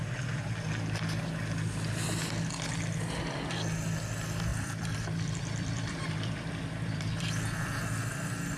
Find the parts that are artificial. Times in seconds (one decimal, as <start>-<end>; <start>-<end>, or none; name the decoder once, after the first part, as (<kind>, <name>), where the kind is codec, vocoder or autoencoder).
4.5-7.8 (vocoder, BigVGAN v2)